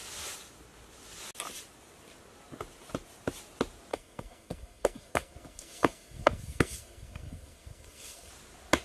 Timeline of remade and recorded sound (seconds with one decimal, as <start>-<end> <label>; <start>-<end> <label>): 0.0-3.9 recorded; 3.9-8.3 remade; 8.3-8.8 recorded